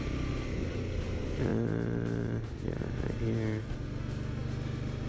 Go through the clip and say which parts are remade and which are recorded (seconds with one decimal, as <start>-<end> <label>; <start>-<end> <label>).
0.0-5.1 recorded